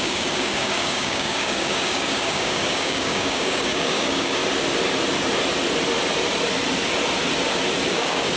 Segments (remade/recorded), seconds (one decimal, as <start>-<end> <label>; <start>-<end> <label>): 0.0-4.4 remade; 4.4-7.9 recorded; 7.9-8.4 remade